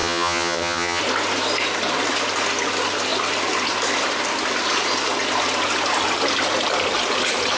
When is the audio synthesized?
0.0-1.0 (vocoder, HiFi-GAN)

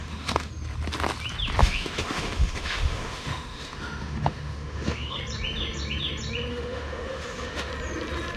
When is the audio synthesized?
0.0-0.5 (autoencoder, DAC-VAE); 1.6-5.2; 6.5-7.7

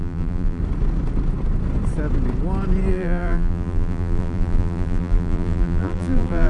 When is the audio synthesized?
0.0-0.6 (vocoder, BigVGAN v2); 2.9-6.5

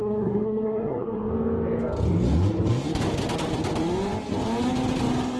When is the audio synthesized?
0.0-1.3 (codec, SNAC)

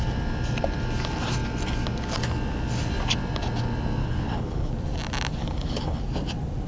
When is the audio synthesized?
4.0-4.7 (codec, HILCodec); 5.4-6.0